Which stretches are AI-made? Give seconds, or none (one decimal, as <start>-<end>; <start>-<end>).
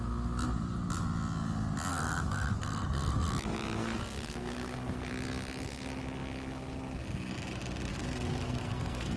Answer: 1.9-3.3; 3.8-5.1; 7.9-9.2